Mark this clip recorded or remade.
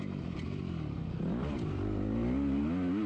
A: recorded